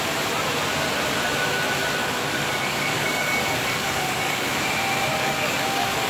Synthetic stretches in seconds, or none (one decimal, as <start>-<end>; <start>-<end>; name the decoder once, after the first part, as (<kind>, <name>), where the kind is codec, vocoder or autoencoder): 2.0-4.5 (codec, DAC); 5.1-6.1